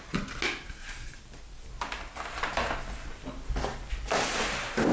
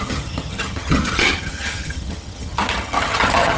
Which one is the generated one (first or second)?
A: second